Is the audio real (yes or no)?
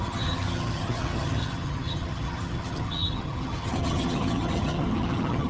no